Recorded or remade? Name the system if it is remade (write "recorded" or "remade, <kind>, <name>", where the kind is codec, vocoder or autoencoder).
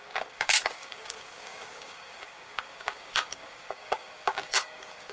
remade, codec, DAC